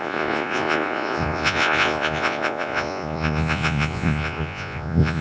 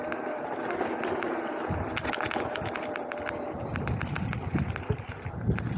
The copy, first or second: first